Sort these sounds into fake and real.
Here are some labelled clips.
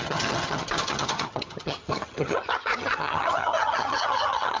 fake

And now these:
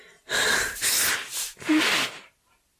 real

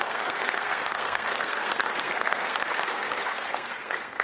fake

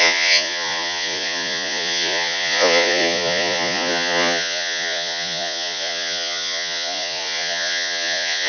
fake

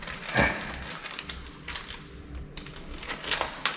real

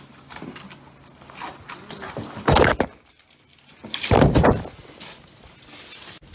real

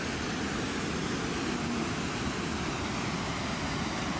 real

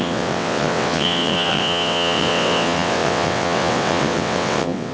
fake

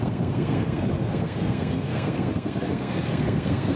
fake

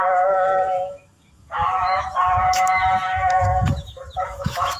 fake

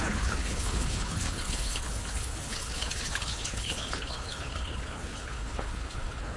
fake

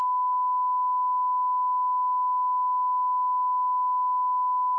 real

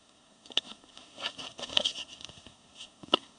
fake